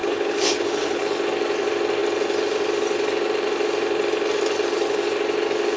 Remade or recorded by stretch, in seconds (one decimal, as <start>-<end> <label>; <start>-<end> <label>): 0.0-1.0 remade; 1.0-5.8 recorded